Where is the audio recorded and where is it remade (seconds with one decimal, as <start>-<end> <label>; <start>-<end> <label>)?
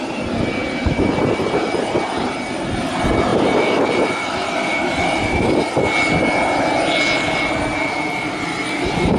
0.0-0.6 recorded; 0.6-1.8 remade; 1.8-3.3 recorded; 3.3-5.8 remade; 5.8-7.7 recorded; 7.7-8.6 remade; 8.6-9.2 recorded